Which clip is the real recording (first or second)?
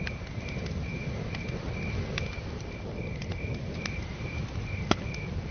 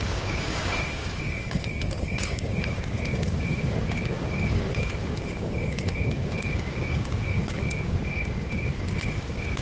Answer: first